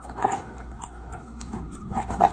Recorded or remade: remade